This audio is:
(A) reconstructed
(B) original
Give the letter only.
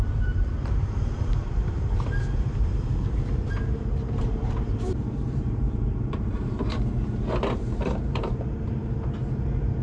A